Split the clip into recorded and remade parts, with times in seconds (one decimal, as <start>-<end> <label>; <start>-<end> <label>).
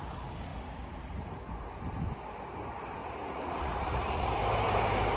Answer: 0.0-3.0 recorded; 3.0-4.3 remade; 4.3-5.2 recorded